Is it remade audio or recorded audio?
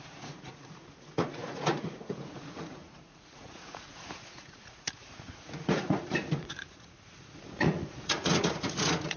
remade